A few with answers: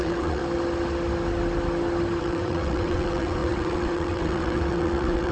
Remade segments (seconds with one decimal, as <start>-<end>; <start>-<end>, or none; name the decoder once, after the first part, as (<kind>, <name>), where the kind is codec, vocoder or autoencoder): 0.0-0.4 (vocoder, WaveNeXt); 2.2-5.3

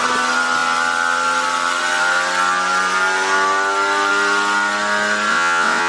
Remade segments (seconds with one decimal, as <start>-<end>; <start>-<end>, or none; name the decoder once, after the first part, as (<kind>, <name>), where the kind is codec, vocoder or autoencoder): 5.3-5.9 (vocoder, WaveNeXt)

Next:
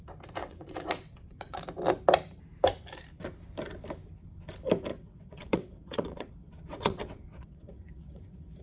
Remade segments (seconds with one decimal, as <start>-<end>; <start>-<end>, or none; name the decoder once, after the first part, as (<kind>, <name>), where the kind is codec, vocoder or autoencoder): 0.4-1.6 (vocoder, WaveNeXt); 4.9-6.3; 6.7-8.6

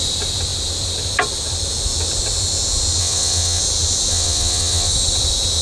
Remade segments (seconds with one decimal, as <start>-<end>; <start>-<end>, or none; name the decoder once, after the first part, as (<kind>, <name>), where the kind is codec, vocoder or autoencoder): 3.0-3.6 (vocoder, WaveNeXt); 4.1-4.9

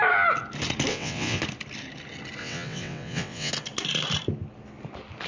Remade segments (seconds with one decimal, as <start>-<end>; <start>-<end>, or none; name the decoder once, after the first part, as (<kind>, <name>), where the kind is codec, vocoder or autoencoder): 0.9-1.4 (vocoder, WaveNeXt); 2.4-3.5